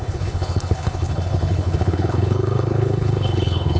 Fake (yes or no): yes